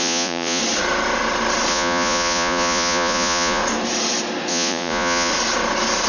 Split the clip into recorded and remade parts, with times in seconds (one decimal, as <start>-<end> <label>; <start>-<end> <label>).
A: 0.0-0.6 remade; 0.6-1.7 recorded; 1.7-3.6 remade; 3.6-4.5 recorded; 4.5-5.3 remade; 5.3-6.1 recorded